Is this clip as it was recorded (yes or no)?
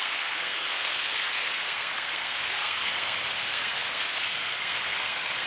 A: no